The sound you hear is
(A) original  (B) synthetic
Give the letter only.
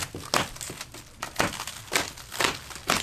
A